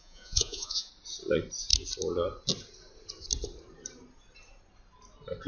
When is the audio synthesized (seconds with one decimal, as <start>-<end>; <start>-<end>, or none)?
0.0-0.9